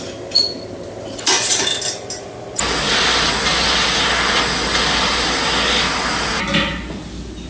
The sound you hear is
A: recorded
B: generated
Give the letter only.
A